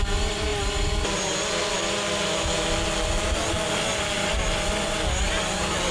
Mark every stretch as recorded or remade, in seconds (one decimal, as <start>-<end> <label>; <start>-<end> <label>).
0.0-5.9 recorded